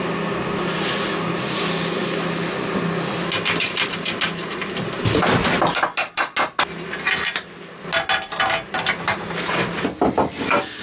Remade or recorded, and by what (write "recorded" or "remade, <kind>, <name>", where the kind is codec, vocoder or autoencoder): recorded